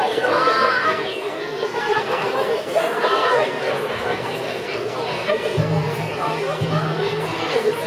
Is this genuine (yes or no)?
no